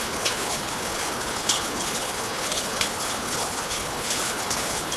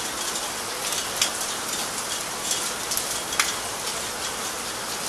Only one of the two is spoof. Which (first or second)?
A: first